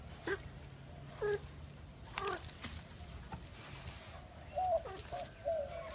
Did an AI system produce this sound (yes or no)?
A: no